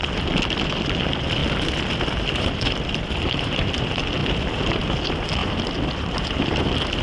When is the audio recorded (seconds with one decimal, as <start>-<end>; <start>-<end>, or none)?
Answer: 1.4-2.3